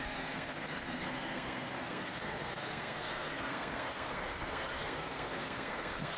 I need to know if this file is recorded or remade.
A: remade